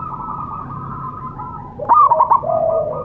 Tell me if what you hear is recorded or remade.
recorded